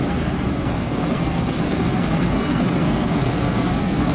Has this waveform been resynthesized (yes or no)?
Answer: yes